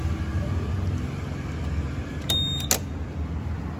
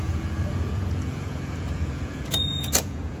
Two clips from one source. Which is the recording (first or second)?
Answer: first